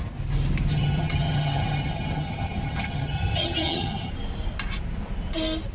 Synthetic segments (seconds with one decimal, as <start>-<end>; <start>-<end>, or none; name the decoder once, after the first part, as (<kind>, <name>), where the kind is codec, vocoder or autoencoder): 0.7-4.1 (vocoder, HiFi-GAN)